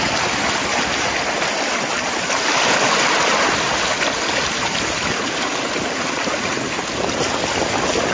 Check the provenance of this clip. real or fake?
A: real